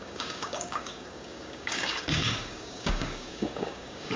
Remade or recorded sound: remade